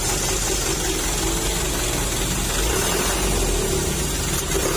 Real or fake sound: real